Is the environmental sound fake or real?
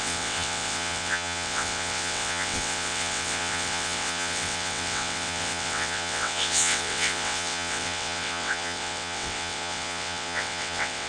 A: fake